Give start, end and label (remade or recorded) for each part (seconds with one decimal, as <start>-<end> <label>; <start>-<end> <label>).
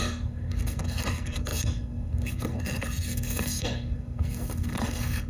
0.0-5.3 remade